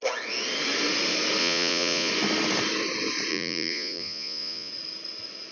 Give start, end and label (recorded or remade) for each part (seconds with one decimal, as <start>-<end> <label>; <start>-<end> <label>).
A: 0.0-1.4 recorded; 1.4-2.1 remade; 2.1-3.3 recorded; 3.3-4.7 remade; 4.7-5.5 recorded